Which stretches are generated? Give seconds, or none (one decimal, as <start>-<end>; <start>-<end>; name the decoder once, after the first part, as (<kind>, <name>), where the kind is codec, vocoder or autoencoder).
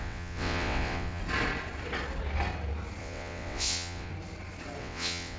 0.0-1.2 (vocoder, WaveNeXt); 3.0-4.1; 4.8-5.4